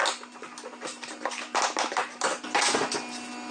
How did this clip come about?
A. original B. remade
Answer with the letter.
A